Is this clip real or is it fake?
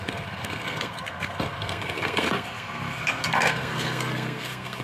fake